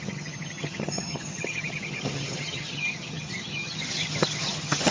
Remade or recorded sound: remade